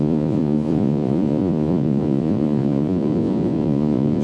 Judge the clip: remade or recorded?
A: remade